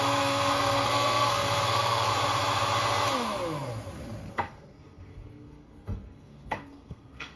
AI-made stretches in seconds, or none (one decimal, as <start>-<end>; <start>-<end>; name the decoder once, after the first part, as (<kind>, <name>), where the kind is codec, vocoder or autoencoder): 0.0-2.1 (codec, SNAC); 4.3-7.4